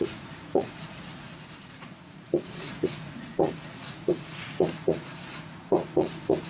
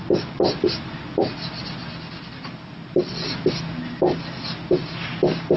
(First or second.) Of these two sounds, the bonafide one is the second